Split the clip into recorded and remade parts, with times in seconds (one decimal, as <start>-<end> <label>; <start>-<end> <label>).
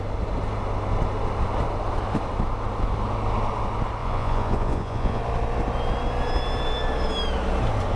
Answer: 0.0-4.0 recorded; 4.0-5.2 remade; 5.2-8.0 recorded